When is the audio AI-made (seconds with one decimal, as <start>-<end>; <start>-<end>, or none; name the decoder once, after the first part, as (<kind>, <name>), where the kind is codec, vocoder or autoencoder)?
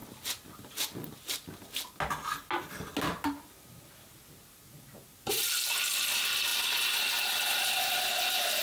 none